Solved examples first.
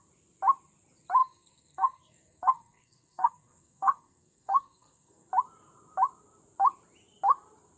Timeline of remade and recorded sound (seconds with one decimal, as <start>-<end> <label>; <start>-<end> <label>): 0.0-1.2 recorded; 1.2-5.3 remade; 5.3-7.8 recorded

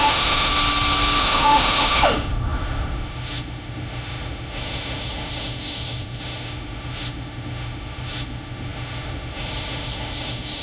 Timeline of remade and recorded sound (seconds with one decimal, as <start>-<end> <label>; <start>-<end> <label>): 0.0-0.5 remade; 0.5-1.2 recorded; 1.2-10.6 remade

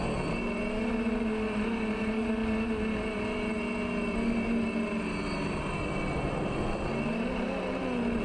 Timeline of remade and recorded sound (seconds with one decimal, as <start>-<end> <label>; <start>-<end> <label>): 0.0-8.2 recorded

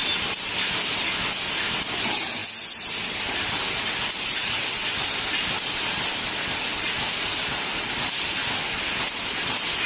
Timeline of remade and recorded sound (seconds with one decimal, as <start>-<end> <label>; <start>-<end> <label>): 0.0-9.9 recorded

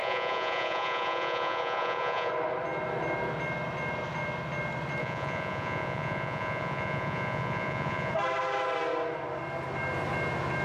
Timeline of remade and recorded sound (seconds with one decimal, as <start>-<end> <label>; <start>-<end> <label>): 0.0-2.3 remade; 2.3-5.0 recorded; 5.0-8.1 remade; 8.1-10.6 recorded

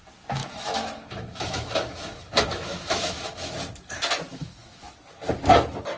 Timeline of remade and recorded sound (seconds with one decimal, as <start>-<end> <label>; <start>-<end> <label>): 0.0-0.4 recorded; 0.4-3.5 remade; 3.5-4.3 recorded; 4.3-4.9 remade; 4.9-6.0 recorded